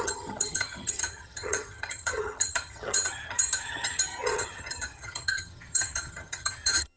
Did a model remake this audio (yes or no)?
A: yes